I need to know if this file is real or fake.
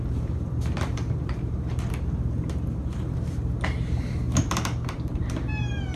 fake